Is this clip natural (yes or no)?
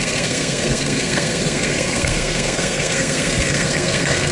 no